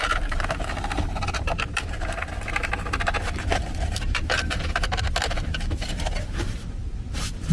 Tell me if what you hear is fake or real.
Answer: fake